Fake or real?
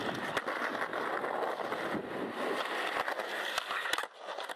real